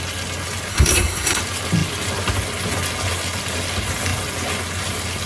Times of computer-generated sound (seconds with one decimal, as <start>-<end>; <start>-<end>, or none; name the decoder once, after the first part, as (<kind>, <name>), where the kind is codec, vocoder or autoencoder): 0.7-1.4 (codec, SNAC)